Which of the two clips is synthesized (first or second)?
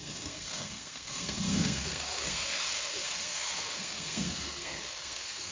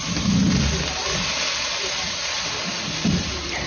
first